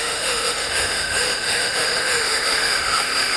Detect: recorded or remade remade